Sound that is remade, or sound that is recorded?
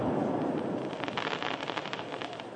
remade